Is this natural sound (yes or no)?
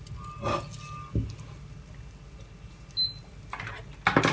yes